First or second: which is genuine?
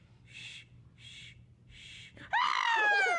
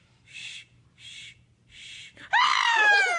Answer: first